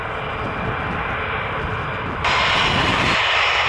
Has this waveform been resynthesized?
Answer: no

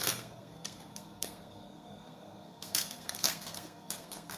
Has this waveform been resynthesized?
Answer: yes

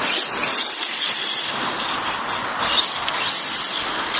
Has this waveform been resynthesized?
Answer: no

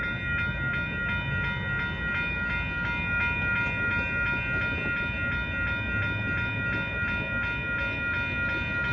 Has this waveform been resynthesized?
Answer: no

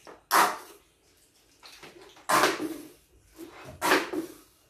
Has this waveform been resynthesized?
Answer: no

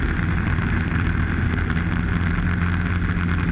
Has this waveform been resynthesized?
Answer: no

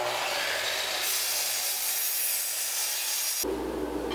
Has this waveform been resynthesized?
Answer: no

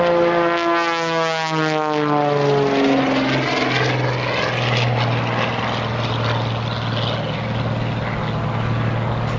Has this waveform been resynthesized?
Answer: no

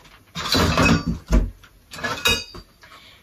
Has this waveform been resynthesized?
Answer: no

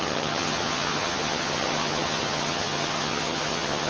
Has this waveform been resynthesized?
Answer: yes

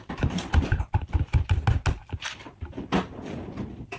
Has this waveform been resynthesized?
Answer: no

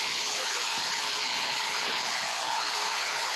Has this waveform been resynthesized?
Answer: yes